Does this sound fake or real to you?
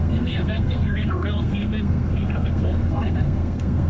fake